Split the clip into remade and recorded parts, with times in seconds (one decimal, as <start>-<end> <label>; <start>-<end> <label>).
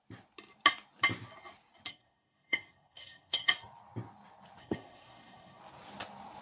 0.0-1.9 recorded; 1.9-3.5 remade; 3.5-4.6 recorded; 4.6-5.6 remade; 5.6-6.4 recorded